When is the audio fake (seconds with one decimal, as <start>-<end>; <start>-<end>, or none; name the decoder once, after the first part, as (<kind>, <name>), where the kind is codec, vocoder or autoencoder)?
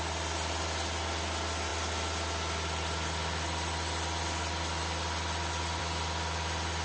none